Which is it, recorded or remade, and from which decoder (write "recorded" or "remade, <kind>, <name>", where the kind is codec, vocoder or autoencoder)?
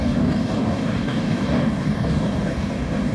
remade, codec, DAC